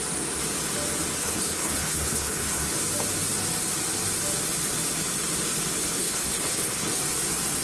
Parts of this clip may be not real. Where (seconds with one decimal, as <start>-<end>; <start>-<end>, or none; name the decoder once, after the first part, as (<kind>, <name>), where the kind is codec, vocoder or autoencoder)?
1.2-2.6 (codec, HILCodec); 5.8-7.0